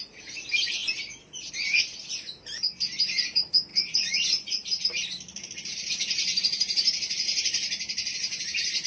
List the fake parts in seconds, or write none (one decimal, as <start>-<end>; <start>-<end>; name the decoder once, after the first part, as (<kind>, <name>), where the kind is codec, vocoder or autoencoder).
3.7-4.8 (vocoder, BigVGAN v2)